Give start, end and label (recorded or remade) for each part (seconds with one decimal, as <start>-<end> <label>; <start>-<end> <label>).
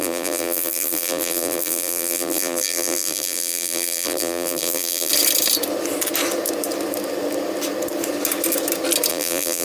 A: 0.0-5.1 remade; 5.1-9.1 recorded; 9.1-9.6 remade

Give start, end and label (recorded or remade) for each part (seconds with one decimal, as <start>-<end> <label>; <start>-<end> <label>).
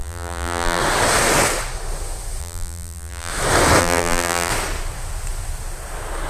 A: 0.0-0.8 remade; 0.8-2.4 recorded; 2.4-3.3 remade; 3.3-3.8 recorded; 3.8-4.5 remade; 4.5-6.3 recorded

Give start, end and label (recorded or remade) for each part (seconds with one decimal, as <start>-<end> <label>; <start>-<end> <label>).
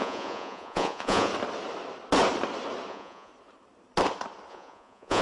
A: 0.0-1.3 remade; 1.3-2.9 recorded; 2.9-3.3 remade; 3.3-4.5 recorded; 4.5-5.2 remade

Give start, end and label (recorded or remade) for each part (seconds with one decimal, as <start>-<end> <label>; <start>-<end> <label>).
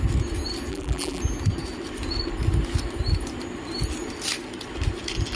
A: 0.0-0.7 recorded; 0.7-1.2 remade; 1.2-5.4 recorded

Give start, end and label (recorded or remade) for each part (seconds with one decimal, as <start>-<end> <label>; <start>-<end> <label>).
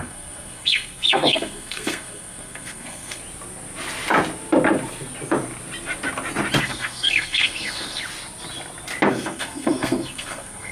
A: 0.0-3.2 remade; 3.2-6.6 recorded; 6.6-8.0 remade; 8.0-9.1 recorded; 9.1-10.7 remade